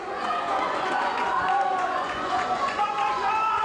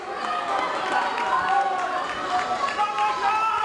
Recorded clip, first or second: second